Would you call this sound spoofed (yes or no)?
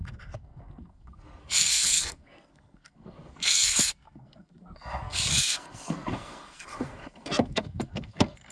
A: yes